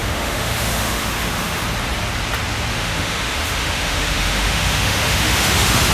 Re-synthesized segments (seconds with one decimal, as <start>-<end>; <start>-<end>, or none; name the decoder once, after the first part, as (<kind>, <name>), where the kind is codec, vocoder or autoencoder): 0.0-1.6 (autoencoder, DAC-VAE); 2.7-5.9